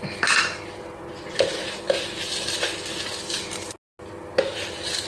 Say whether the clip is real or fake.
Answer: real